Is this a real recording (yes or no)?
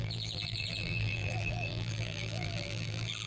no